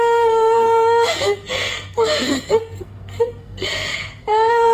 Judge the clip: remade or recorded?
remade